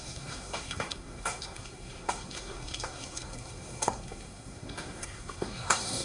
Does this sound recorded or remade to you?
remade